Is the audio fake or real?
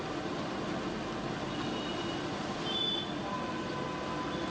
real